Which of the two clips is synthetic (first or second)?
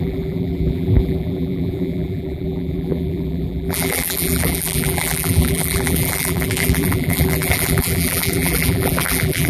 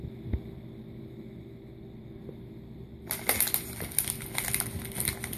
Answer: first